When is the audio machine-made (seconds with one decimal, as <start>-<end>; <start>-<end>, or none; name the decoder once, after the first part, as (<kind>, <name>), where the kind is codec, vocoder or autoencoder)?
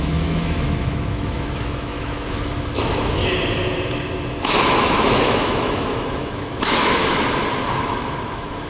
0.0-3.2 (autoencoder, DAC-VAE); 4.3-7.0; 7.8-8.7